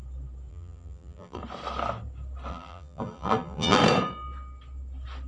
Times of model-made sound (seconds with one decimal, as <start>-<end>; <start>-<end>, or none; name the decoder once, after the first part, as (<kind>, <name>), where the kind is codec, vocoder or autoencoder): 0.5-1.4 (vocoder, BigVGAN v2); 2.5-3.8